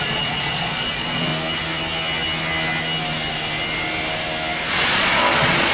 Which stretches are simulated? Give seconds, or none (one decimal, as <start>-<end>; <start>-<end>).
0.0-1.3; 4.7-5.7